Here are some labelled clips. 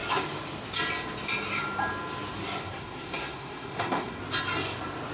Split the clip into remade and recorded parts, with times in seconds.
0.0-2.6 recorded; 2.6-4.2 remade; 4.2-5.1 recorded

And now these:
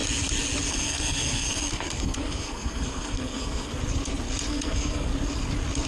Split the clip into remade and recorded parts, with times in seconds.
0.0-0.7 recorded; 0.7-3.7 remade; 3.7-4.5 recorded; 4.5-5.1 remade; 5.1-5.9 recorded